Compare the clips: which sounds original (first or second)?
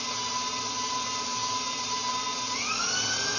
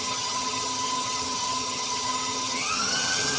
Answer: first